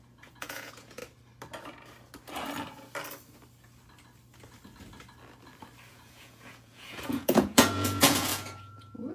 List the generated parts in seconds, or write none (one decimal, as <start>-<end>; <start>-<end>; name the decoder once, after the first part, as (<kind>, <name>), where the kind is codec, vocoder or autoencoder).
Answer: 0.0-1.0 (vocoder, Vocos); 5.9-9.1